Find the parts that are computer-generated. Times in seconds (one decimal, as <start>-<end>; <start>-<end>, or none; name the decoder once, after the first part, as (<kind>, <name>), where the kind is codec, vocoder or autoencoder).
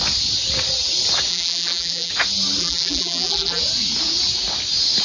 1.3-2.1 (vocoder, BigVGAN v2); 2.6-3.6